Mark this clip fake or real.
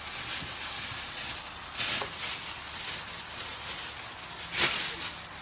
real